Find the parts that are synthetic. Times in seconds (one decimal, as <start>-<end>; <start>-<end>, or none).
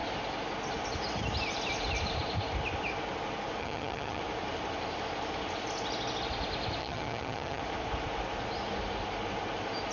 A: 3.6-4.2; 6.8-7.6